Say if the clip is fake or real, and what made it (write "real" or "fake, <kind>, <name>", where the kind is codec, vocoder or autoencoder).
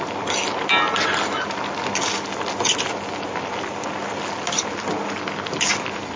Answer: real